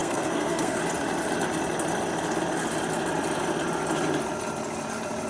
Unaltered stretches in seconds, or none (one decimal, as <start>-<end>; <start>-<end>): 0.8-5.3